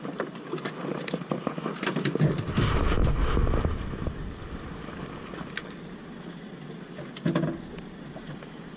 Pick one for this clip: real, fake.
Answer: real